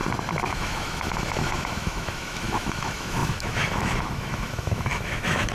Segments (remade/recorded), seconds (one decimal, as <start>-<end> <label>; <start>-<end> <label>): 0.0-0.5 recorded; 0.5-5.5 remade